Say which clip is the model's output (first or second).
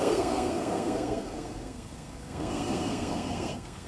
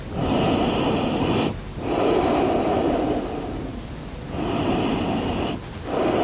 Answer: first